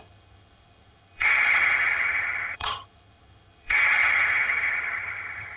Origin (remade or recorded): remade